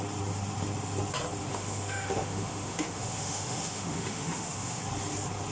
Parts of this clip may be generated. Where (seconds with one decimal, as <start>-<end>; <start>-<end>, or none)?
1.5-4.8